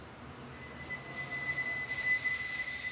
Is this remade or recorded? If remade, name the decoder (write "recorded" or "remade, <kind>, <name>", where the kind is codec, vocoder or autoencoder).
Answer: recorded